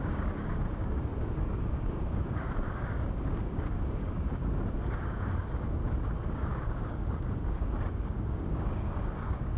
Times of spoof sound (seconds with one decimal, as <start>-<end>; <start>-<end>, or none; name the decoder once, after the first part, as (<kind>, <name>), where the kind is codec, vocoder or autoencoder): 0.0-1.1 (codec, DAC); 1.7-5.8; 6.3-9.6